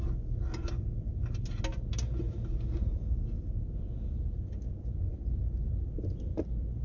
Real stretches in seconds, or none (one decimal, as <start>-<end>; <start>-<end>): 0.0-6.8